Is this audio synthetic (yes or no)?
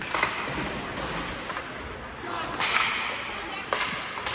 no